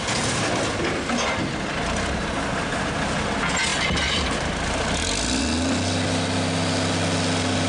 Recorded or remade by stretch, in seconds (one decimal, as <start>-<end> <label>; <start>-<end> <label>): 0.0-7.7 recorded

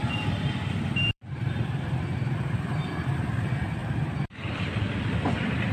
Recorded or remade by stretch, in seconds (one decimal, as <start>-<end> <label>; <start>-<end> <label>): 0.0-3.8 remade; 3.8-4.5 recorded; 4.5-5.7 remade

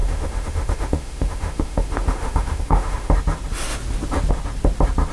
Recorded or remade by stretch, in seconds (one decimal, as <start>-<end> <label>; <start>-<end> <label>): 0.0-3.1 remade; 3.1-5.1 recorded

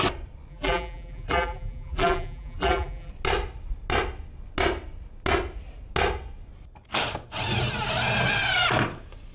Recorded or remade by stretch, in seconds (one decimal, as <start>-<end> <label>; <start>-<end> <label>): 0.0-0.5 recorded; 0.5-3.1 remade; 3.1-9.3 recorded

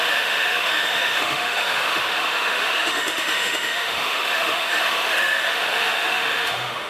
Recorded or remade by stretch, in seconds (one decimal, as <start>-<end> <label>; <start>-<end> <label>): 0.0-6.9 remade

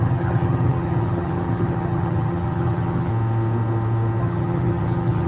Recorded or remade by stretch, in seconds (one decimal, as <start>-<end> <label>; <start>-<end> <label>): 0.0-3.1 remade; 3.1-4.2 recorded; 4.2-5.3 remade

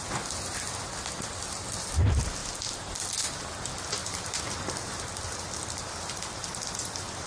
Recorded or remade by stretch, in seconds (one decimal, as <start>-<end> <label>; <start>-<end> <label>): 0.0-4.0 recorded; 4.0-5.4 remade; 5.4-7.3 recorded

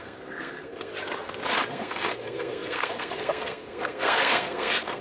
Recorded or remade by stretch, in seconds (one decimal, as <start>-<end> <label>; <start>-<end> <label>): 0.0-0.9 remade; 0.9-1.7 recorded; 1.7-5.0 remade